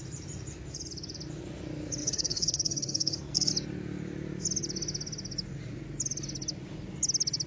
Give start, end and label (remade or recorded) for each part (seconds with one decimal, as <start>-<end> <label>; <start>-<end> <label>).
0.0-2.0 recorded; 2.0-3.5 remade; 3.5-7.5 recorded

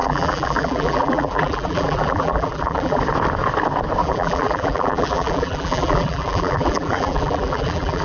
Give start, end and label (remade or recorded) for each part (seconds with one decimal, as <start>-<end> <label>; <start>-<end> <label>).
0.0-3.0 remade; 3.0-4.0 recorded; 4.0-8.0 remade

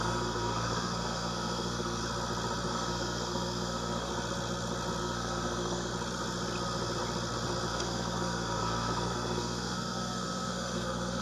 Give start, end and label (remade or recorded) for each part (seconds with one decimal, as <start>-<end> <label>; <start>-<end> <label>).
0.0-2.0 remade; 2.0-2.7 recorded; 2.7-4.1 remade; 4.1-5.0 recorded; 5.0-5.9 remade; 5.9-7.7 recorded; 7.7-11.2 remade

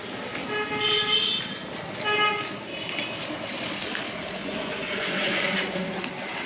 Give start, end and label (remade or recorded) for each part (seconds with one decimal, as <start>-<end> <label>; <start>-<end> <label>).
0.0-4.4 recorded; 4.4-6.0 remade; 6.0-6.5 recorded

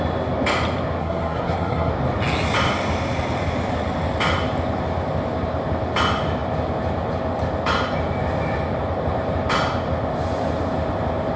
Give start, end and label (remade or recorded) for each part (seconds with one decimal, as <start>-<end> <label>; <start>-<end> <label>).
0.0-1.0 recorded; 1.0-1.9 remade; 1.9-11.4 recorded

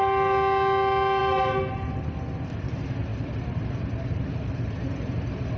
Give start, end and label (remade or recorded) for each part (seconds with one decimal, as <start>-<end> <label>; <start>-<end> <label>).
0.0-5.6 recorded

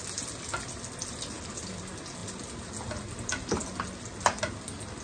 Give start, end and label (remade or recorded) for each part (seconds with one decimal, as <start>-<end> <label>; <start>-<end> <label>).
0.0-5.0 recorded

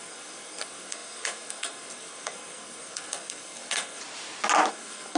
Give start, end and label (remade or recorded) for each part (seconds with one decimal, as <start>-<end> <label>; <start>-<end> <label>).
0.0-4.0 remade; 4.0-4.7 recorded; 4.7-5.2 remade